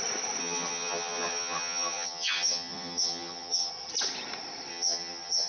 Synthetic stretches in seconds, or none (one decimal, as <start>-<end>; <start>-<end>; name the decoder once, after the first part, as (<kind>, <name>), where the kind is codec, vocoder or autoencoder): 0.4-3.7 (vocoder, HiFi-GAN); 4.7-5.5